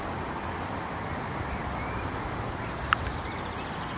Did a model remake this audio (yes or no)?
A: no